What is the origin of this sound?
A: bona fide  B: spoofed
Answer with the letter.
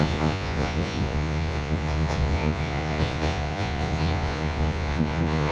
B